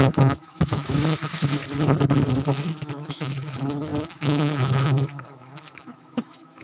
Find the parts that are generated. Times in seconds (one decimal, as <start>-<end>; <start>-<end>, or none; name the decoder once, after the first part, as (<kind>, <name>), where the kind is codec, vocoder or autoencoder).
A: 0.0-1.6 (autoencoder, DAC-VAE); 2.3-6.6